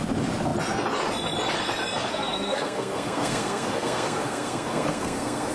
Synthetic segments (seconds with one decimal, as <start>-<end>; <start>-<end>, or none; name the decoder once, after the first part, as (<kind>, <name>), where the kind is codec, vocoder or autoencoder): 2.1-5.5 (codec, SNAC)